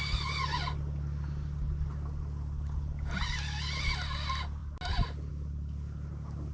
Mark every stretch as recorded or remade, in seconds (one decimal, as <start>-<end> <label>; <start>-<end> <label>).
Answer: 0.0-6.5 recorded